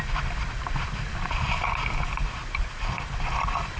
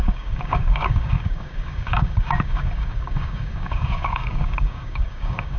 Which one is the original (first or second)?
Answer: first